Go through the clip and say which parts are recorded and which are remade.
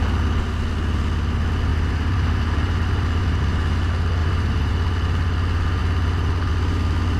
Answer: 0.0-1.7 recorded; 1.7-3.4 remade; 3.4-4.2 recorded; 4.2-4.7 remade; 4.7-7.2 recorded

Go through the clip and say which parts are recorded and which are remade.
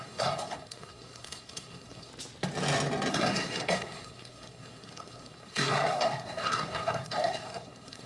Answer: 0.0-2.1 remade; 2.1-3.1 recorded; 3.1-8.1 remade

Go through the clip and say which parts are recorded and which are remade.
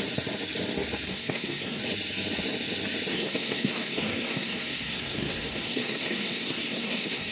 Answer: 0.0-1.1 recorded; 1.1-1.8 remade; 1.8-3.1 recorded; 3.1-7.3 remade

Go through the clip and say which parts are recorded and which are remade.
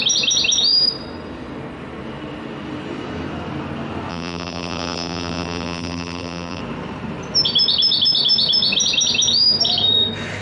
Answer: 0.0-4.1 recorded; 4.1-6.6 remade; 6.6-10.4 recorded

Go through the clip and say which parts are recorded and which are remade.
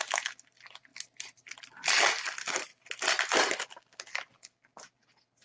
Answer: 0.0-5.4 recorded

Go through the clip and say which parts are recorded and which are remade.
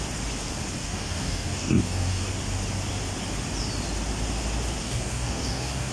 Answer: 0.0-0.8 recorded; 0.8-2.3 remade; 2.3-4.8 recorded; 4.8-5.9 remade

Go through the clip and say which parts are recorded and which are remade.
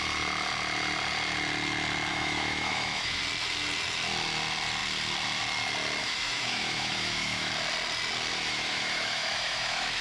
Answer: 0.0-2.1 recorded; 2.1-3.2 remade; 3.2-6.0 recorded; 6.0-7.5 remade; 7.5-8.3 recorded; 8.3-10.0 remade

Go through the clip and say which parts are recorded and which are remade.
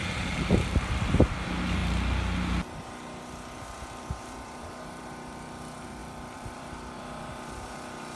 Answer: 0.0-1.2 recorded; 1.2-1.8 remade; 1.8-3.8 recorded; 3.8-8.2 remade